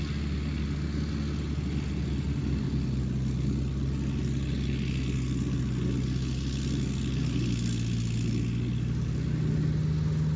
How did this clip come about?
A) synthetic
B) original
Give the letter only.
B